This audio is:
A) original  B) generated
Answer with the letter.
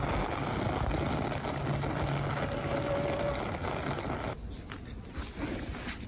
A